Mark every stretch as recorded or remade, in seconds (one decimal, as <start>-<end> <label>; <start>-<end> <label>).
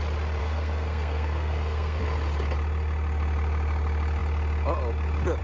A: 0.0-0.4 recorded; 0.4-2.0 remade; 2.0-5.4 recorded